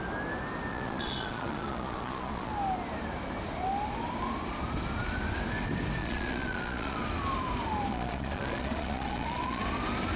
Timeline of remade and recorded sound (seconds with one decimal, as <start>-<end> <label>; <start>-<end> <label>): 0.0-0.7 recorded; 0.7-2.5 remade; 2.5-6.0 recorded; 6.0-7.0 remade; 7.0-7.9 recorded; 7.9-9.6 remade; 9.6-10.2 recorded